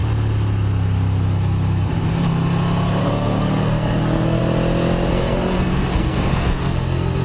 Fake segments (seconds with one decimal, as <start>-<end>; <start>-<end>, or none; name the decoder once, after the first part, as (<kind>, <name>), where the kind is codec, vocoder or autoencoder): 3.0-4.4 (codec, SNAC); 5.1-7.2